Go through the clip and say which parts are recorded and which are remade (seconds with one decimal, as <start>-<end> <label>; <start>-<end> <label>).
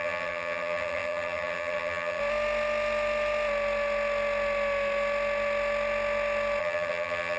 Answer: 0.0-2.2 remade; 2.2-6.6 recorded; 6.6-7.4 remade